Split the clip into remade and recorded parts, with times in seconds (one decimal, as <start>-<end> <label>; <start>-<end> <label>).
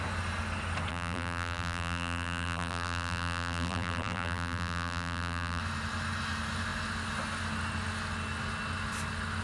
0.0-0.9 recorded; 0.9-5.6 remade; 5.6-9.4 recorded